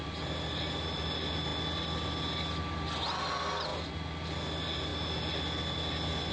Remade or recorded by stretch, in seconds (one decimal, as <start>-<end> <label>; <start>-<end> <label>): 0.0-1.0 remade; 1.0-6.3 recorded